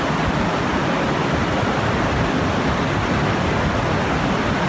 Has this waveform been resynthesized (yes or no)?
no